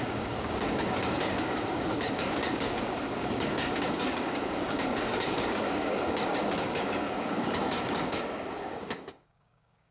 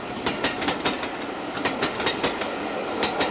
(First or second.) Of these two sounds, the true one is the second